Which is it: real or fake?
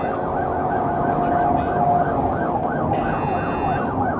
real